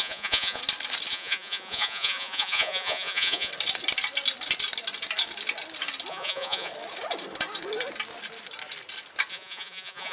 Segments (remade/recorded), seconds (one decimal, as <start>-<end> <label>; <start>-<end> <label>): 0.0-0.6 remade; 0.6-1.1 recorded; 1.1-3.5 remade; 3.5-6.1 recorded; 6.1-6.7 remade; 6.7-9.3 recorded; 9.3-10.1 remade